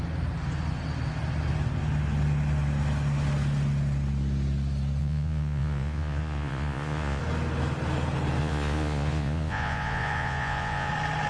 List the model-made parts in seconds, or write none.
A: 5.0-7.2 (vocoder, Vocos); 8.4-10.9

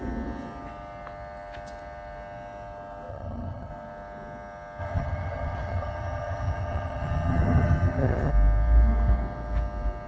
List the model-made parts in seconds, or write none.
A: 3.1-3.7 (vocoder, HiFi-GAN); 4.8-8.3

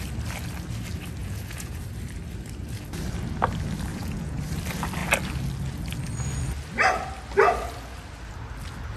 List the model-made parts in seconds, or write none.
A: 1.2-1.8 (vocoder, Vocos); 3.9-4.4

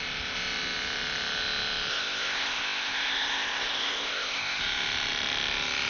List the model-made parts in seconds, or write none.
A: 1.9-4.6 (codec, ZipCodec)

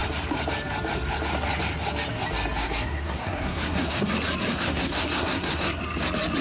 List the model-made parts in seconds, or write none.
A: 2.6-4.1 (codec, SNAC); 4.5-5.8

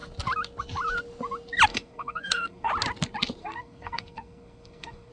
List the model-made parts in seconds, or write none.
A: 1.7-2.7 (codec, SNAC); 3.4-5.1

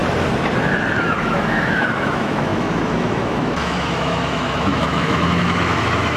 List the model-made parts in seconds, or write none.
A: 1.2-6.2 (autoencoder, DAC-VAE)